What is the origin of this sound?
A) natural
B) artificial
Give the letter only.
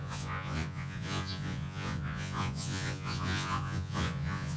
B